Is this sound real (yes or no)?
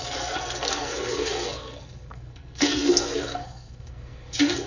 no